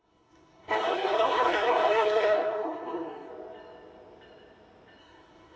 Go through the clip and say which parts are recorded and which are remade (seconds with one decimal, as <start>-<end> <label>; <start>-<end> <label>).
0.0-3.3 remade; 3.3-5.0 recorded; 5.0-5.6 remade